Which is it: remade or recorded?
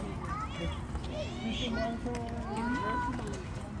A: recorded